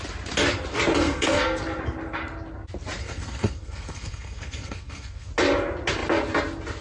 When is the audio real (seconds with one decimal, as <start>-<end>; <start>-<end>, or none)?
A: 0.0-1.0; 1.6-3.0; 5.3-6.8